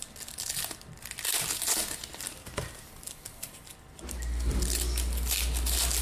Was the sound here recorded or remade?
recorded